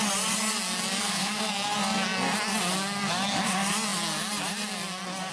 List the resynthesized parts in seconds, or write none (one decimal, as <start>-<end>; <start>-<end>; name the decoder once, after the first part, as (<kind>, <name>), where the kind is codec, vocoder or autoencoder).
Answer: 1.0-1.5 (codec, SNAC)